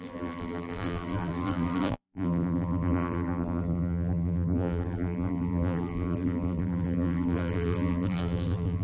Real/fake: fake